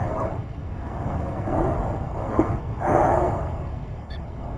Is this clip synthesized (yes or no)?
yes